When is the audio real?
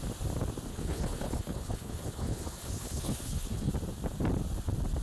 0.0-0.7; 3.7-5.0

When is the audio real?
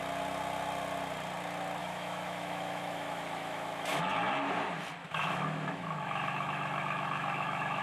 0.0-1.8; 4.0-5.0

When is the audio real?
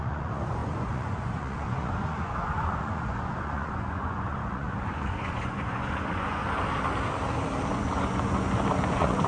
6.4-7.7